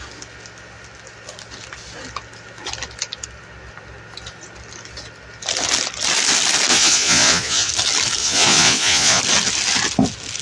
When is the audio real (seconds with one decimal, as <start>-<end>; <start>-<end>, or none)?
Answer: 0.0-6.7; 7.7-8.2; 9.2-10.4